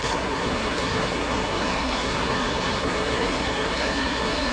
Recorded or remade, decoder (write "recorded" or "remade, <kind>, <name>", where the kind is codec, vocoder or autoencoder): remade, codec, SNAC